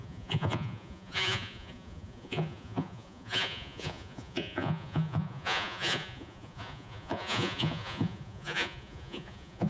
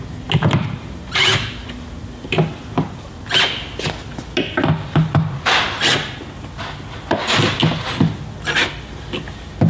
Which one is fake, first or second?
first